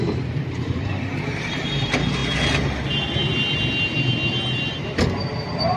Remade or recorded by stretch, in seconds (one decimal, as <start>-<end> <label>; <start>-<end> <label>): 0.0-2.2 remade; 2.2-4.7 recorded; 4.7-5.8 remade